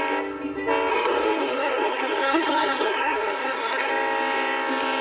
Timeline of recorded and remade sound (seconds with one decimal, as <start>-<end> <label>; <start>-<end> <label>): 0.0-0.9 recorded; 0.9-3.9 remade; 3.9-5.0 recorded